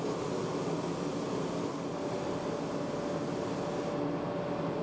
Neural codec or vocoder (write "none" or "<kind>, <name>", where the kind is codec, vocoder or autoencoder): none